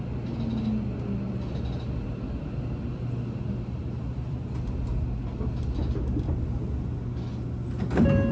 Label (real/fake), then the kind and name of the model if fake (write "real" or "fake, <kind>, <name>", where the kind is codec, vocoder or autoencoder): real